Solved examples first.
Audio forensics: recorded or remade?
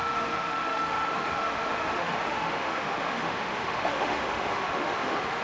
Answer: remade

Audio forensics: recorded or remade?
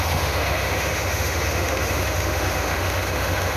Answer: remade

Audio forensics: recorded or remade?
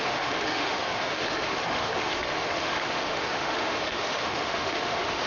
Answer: remade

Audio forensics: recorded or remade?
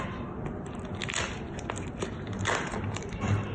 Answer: recorded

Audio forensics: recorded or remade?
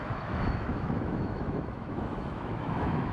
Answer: remade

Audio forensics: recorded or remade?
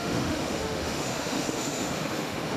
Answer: remade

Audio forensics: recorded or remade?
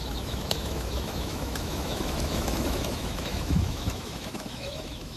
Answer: remade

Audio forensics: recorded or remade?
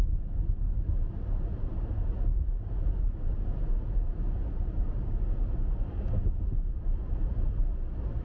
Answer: recorded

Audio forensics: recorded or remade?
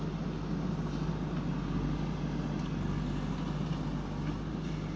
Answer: recorded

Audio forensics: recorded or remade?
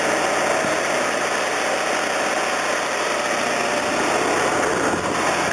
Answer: recorded